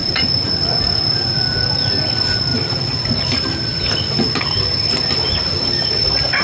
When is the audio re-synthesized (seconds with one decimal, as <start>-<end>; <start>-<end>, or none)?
0.0-0.7